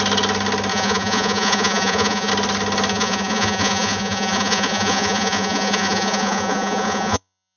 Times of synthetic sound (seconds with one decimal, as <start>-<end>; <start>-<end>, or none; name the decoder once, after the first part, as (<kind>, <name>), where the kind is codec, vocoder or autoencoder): 0.7-2.3 (vocoder, Vocos); 2.9-7.6